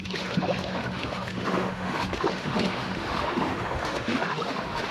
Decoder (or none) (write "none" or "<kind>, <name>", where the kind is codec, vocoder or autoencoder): autoencoder, DAC-VAE